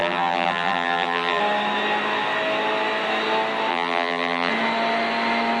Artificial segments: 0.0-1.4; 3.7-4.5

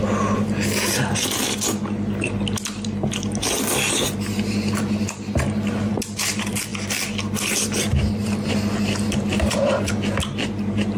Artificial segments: 9.3-9.9

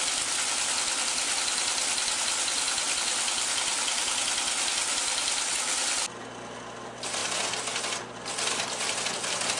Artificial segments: none

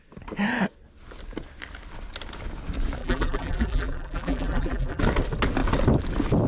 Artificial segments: 3.0-5.0

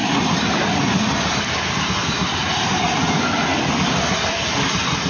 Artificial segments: 0.0-0.5

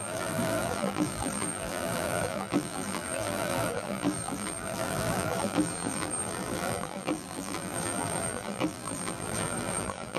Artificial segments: 0.0-10.2